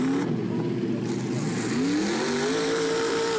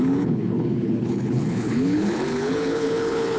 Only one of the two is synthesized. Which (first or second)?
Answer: second